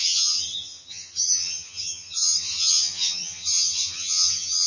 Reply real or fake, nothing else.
fake